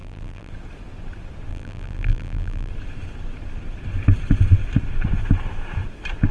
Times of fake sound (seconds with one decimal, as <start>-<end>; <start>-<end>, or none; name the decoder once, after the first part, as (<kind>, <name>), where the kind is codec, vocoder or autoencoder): 0.0-0.5 (vocoder, BigVGAN v2); 1.5-2.7